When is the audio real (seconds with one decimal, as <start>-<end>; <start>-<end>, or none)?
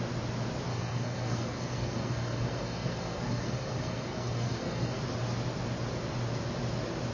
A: 0.0-0.7; 5.0-7.1